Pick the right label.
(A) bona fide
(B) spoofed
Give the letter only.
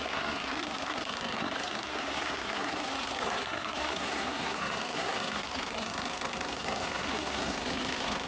B